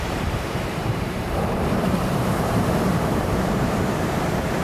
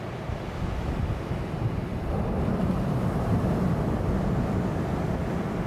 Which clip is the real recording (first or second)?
second